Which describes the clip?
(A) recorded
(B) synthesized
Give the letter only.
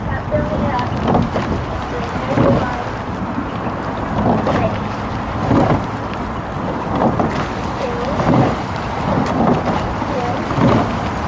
A